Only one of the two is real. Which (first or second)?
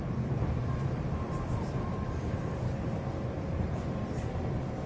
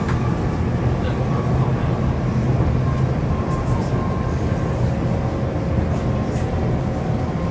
second